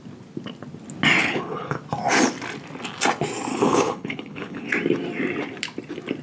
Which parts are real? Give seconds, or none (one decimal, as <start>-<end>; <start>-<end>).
0.0-1.2; 1.8-3.5; 4.7-6.2